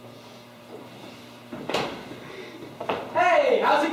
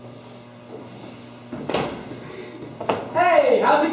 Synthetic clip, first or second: first